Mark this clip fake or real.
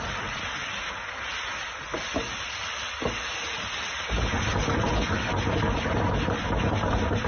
real